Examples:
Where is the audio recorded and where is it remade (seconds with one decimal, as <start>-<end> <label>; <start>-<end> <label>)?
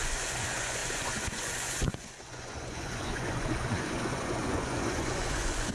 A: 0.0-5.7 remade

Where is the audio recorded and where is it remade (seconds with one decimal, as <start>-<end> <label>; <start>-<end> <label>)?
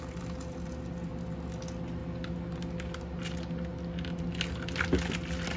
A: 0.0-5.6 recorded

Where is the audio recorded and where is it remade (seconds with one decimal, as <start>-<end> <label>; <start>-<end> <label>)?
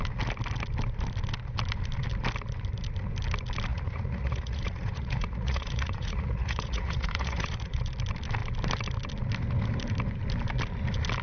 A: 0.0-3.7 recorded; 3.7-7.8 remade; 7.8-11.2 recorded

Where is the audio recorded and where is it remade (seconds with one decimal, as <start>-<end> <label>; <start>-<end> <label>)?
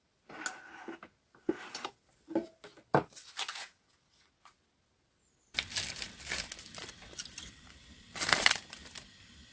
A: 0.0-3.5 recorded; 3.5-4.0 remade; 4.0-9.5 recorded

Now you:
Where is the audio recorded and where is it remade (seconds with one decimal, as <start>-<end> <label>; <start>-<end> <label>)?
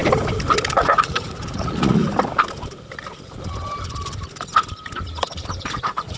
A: 0.0-0.7 recorded; 0.7-2.0 remade; 2.0-5.7 recorded; 5.7-6.2 remade